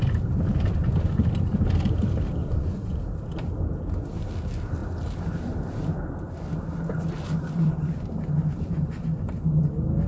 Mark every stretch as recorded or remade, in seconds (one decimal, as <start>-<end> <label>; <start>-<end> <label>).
0.0-2.4 recorded; 2.4-3.0 remade; 3.0-10.1 recorded